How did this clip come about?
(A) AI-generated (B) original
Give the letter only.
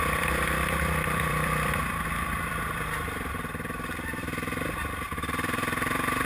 A